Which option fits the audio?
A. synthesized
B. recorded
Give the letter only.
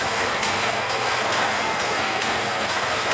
A